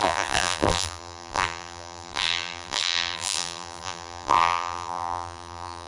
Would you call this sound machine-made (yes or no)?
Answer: yes